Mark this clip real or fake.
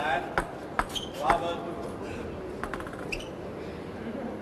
real